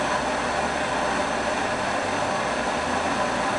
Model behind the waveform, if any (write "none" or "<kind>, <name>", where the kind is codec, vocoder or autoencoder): none